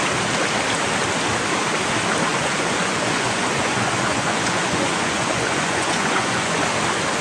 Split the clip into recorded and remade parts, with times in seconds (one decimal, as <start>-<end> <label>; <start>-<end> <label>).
0.0-2.3 recorded; 2.3-6.6 remade; 6.6-7.2 recorded